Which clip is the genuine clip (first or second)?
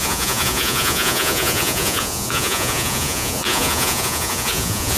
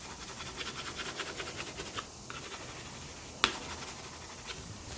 second